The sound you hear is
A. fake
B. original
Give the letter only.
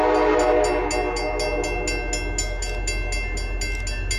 B